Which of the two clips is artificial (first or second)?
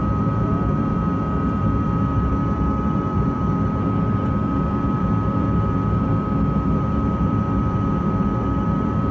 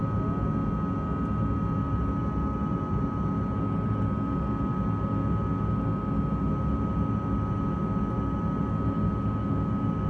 first